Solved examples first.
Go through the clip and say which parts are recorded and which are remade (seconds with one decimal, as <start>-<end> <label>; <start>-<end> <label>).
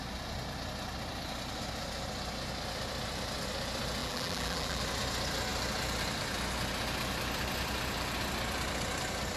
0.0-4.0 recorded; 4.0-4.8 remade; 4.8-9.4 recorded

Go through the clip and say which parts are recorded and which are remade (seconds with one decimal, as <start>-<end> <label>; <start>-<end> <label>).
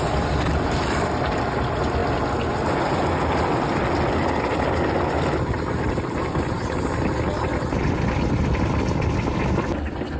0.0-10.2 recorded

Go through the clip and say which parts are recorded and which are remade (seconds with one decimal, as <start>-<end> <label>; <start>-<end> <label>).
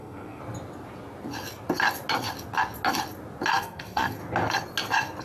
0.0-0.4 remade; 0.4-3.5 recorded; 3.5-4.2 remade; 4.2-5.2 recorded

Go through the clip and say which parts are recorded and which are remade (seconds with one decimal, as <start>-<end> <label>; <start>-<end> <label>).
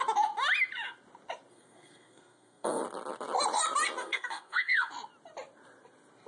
0.0-1.5 recorded; 1.5-2.8 remade; 2.8-4.0 recorded; 4.0-4.9 remade; 4.9-6.3 recorded